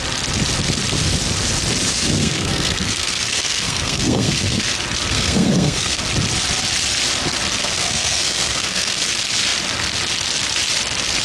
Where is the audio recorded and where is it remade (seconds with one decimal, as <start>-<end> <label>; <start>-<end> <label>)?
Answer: 0.0-1.9 recorded; 1.9-4.6 remade; 4.6-5.1 recorded; 5.1-6.0 remade; 6.0-7.6 recorded; 7.6-9.0 remade; 9.0-11.2 recorded